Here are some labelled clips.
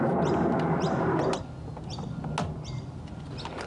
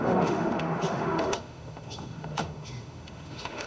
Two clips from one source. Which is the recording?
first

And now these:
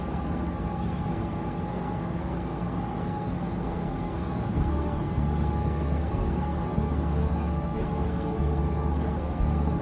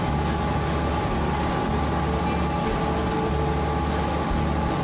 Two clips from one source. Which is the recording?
second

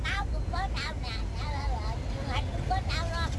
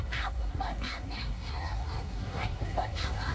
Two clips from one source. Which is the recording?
first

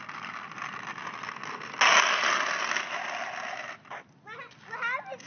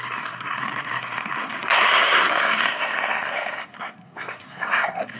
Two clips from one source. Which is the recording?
first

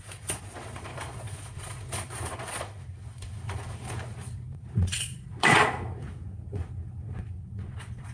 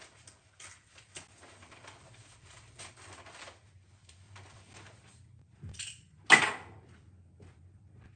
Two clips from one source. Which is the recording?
second